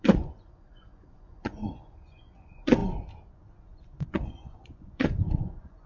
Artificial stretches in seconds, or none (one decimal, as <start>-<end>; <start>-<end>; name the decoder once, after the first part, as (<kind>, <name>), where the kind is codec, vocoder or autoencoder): 0.0-2.8 (vocoder, Vocos); 3.3-5.9